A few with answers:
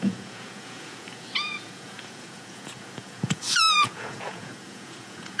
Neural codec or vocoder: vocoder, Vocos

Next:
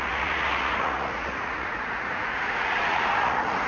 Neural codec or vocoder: vocoder, Vocos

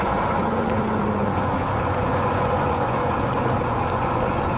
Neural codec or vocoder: vocoder, Vocos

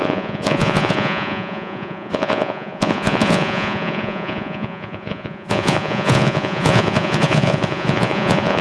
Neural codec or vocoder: vocoder, Vocos